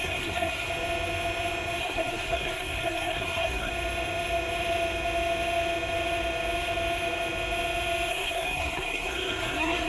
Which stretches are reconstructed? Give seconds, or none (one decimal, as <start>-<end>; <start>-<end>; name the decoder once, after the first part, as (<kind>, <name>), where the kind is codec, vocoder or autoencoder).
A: 0.0-0.7 (codec, SNAC); 1.8-3.7; 8.1-9.9